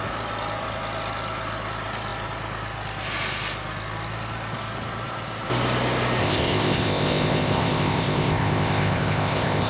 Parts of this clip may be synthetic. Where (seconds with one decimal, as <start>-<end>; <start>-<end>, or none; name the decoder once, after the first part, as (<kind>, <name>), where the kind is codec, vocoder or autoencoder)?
6.2-9.7 (codec, ZipCodec)

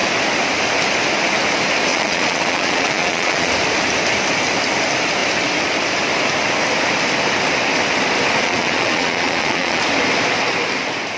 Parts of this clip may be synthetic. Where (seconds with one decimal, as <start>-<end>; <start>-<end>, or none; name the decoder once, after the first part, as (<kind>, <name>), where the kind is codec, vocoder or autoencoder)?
1.9-3.5 (vocoder, Vocos); 8.4-9.8

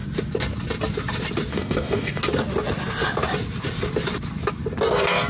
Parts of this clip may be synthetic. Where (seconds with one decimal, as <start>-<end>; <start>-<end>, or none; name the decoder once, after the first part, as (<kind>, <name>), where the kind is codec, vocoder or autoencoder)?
1.5-2.2 (codec, DAC)

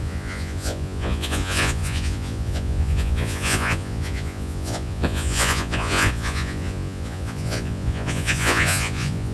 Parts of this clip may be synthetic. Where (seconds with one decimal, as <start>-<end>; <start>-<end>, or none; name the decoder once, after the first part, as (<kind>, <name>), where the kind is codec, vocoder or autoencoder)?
0.0-9.3 (vocoder, Vocos)

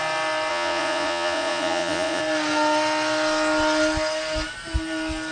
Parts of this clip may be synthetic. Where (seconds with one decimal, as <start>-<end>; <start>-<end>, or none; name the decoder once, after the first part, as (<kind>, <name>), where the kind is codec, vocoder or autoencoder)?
0.5-2.2 (vocoder, Vocos)